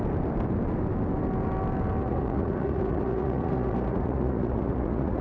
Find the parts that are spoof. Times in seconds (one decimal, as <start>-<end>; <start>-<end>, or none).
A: 2.0-5.2

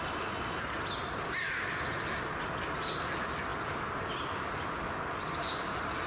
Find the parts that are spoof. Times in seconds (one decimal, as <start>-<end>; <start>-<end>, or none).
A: none

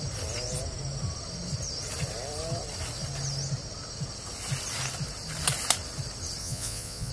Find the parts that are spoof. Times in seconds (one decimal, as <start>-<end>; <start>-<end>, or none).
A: 6.4-7.1

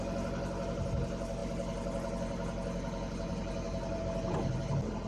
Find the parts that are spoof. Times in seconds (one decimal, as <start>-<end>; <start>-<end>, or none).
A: none